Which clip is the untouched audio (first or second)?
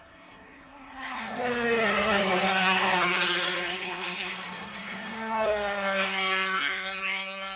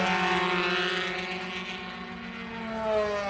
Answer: second